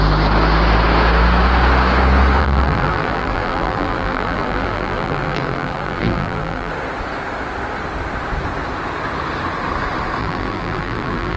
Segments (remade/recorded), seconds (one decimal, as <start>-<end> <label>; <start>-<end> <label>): 0.0-2.4 recorded; 2.4-6.7 remade; 6.7-10.2 recorded; 10.2-11.4 remade